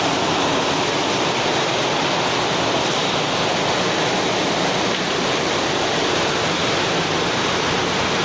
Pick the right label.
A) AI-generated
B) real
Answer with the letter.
B